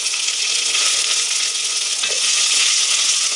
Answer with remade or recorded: remade